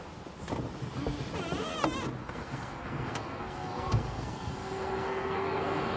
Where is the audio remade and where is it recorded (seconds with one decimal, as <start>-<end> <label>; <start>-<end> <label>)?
0.0-2.2 recorded; 2.2-6.0 remade